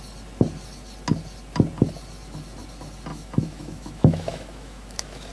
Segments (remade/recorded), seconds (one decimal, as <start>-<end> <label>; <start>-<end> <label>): 0.0-3.1 recorded; 3.1-5.3 remade